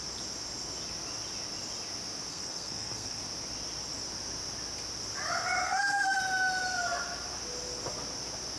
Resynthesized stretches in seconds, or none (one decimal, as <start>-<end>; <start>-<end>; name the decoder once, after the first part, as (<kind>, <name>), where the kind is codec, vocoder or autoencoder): 2.3-3.2 (codec, SNAC); 5.6-6.2

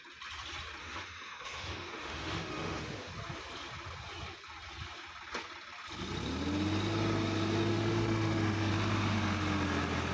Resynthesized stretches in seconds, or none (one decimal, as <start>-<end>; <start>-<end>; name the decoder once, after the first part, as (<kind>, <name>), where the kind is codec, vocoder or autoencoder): 0.8-3.1 (autoencoder, DAC-VAE); 7.7-8.7

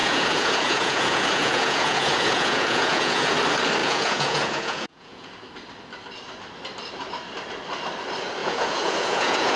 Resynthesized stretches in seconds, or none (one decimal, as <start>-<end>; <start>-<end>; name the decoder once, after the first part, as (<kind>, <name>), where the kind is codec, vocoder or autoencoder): 0.0-3.3 (vocoder, Vocos); 3.8-5.3; 8.4-9.6

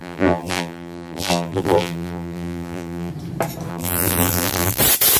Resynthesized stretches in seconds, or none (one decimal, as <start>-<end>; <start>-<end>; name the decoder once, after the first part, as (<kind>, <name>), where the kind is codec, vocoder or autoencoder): 0.0-3.1 (vocoder, BigVGAN v2); 3.7-4.8

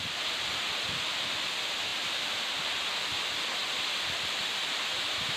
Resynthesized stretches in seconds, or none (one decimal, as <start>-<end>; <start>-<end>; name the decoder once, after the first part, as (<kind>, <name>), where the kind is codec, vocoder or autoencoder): none

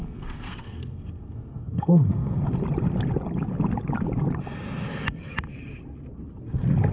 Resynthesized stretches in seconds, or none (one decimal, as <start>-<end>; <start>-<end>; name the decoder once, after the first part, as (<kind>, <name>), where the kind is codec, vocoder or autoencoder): 0.0-2.4 (codec, SNAC)